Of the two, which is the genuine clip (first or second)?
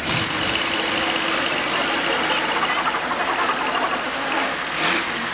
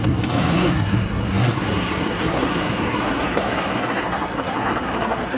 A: first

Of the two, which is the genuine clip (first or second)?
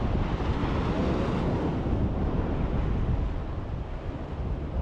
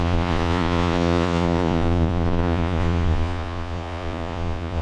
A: first